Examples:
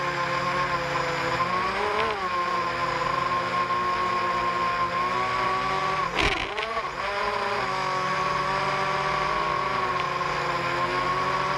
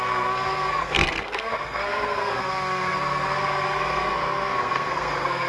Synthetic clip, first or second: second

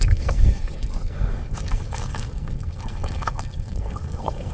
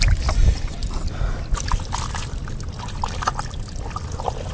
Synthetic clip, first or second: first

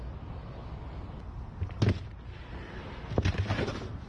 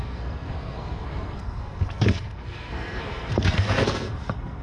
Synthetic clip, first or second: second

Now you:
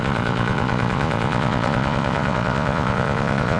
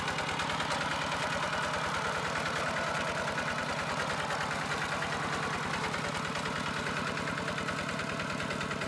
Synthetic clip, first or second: first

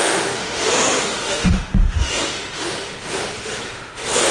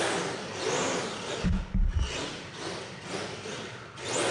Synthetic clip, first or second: first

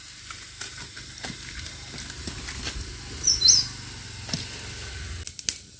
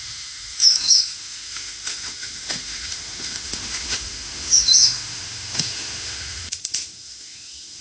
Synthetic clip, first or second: second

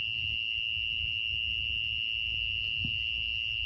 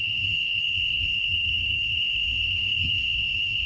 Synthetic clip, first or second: second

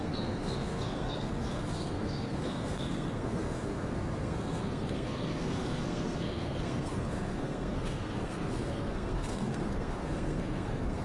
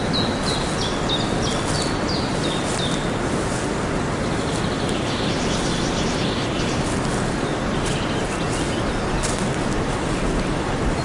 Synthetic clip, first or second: first